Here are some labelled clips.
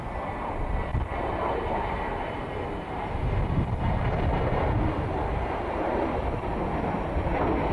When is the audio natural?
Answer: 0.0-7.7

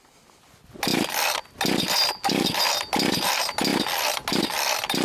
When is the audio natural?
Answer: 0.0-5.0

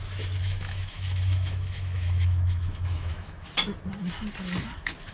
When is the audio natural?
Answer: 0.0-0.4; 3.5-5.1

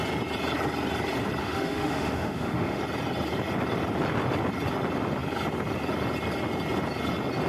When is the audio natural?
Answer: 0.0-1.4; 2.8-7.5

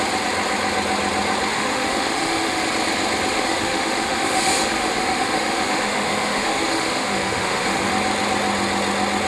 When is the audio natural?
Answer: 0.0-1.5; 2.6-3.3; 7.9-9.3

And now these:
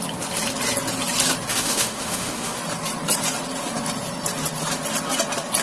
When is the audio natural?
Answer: 0.0-1.5; 2.6-5.6